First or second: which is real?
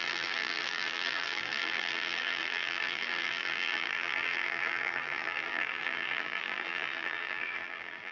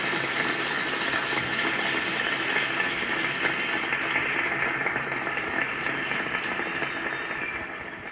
second